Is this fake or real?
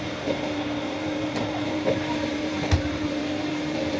fake